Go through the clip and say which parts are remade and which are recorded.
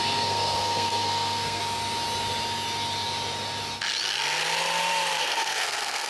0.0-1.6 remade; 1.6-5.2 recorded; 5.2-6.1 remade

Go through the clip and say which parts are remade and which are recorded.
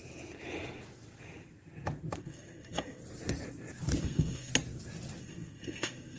0.0-2.2 recorded; 2.2-3.0 remade; 3.0-4.0 recorded; 4.0-4.5 remade; 4.5-5.2 recorded; 5.2-6.2 remade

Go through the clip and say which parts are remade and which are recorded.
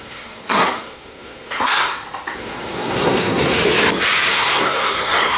0.0-1.9 remade; 1.9-2.4 recorded; 2.4-3.6 remade; 3.6-4.3 recorded; 4.3-5.4 remade